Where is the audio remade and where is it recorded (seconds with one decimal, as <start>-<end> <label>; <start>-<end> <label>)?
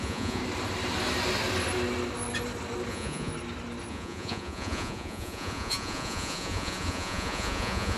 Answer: 0.0-0.4 remade; 0.4-2.9 recorded; 2.9-3.3 remade; 3.3-3.9 recorded; 3.9-8.0 remade